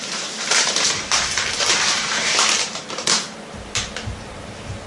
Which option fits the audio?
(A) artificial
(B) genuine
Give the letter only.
A